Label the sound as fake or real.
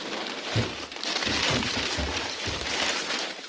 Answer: fake